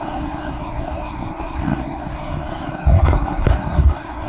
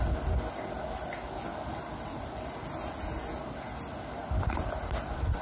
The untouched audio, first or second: second